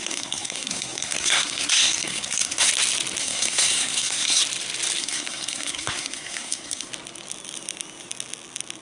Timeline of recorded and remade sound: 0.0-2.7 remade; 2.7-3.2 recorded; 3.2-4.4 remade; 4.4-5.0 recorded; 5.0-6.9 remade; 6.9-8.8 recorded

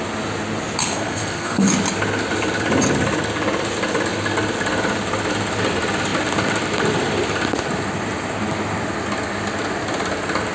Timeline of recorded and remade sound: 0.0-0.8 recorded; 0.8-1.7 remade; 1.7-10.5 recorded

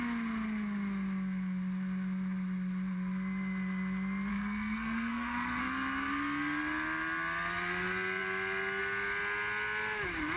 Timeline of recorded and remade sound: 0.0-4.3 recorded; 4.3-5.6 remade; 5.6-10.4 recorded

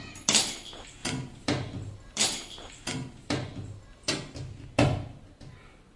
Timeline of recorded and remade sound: 0.0-6.0 recorded

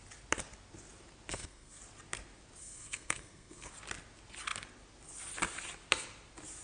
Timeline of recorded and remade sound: 0.0-1.3 recorded; 1.3-1.8 remade; 1.8-2.6 recorded; 2.6-3.7 remade; 3.7-6.6 recorded

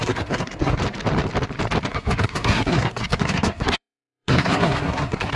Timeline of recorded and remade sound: 0.0-0.8 remade; 0.8-1.9 recorded; 1.9-5.4 remade